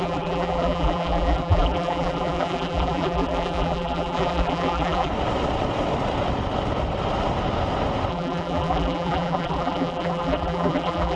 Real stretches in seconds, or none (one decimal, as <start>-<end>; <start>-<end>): 5.1-8.1